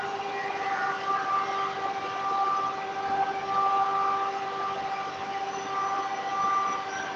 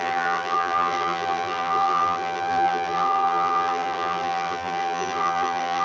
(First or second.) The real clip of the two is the first